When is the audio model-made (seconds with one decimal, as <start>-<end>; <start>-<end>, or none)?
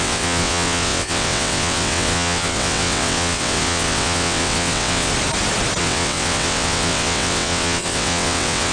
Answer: 0.0-5.1; 5.8-8.7